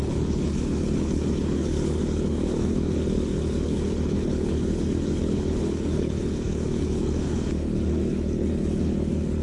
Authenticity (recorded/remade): remade